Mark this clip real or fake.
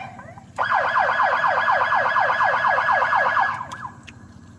real